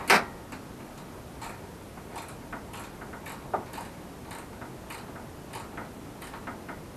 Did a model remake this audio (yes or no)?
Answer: no